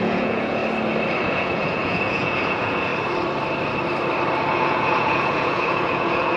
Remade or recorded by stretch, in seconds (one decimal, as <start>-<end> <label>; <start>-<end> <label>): 0.0-0.6 remade; 0.6-1.2 recorded; 1.2-2.9 remade; 2.9-4.5 recorded; 4.5-6.4 remade